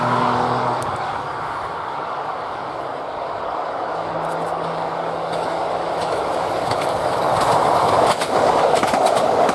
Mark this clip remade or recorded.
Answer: remade